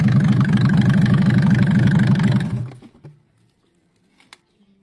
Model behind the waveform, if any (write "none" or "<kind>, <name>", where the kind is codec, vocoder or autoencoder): none